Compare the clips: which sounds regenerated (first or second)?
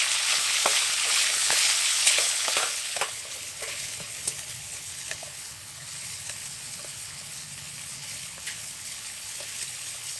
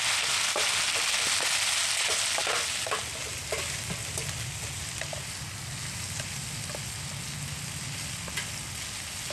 first